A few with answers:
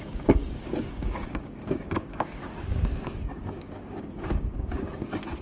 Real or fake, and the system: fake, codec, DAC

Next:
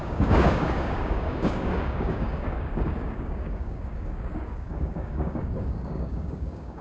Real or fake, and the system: fake, codec, DAC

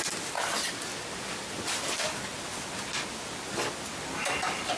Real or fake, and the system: real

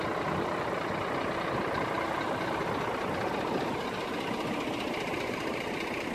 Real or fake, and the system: real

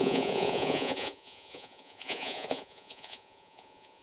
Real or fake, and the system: fake, vocoder, Vocos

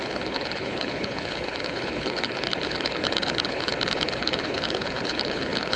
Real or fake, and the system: fake, codec, HILCodec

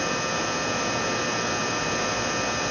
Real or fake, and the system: fake, vocoder, BigVGAN v2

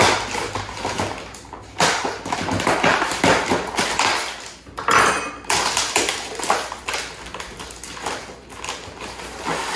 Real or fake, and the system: real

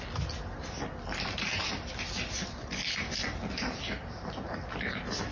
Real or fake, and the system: real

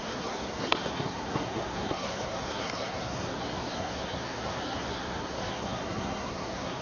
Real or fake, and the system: fake, codec, SNAC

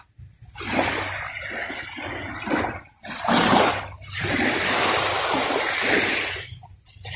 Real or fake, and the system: real